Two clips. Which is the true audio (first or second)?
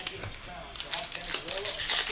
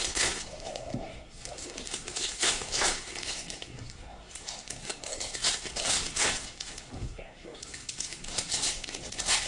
first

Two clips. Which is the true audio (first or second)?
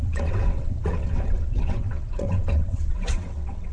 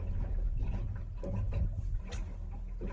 second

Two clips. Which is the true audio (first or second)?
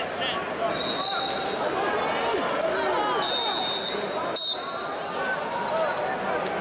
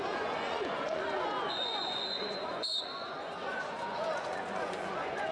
first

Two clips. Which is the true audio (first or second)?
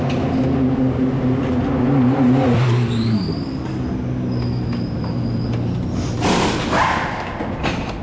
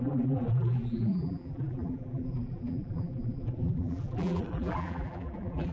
first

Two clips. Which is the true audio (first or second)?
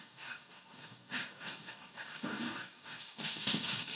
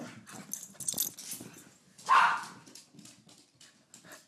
second